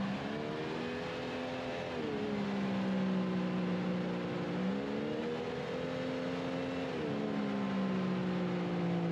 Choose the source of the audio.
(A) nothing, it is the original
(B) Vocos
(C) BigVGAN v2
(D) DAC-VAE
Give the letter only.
A